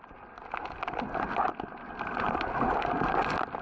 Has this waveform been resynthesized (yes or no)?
no